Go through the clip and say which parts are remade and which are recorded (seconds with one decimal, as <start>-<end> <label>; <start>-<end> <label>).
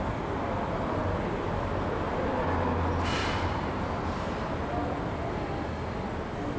0.0-6.6 recorded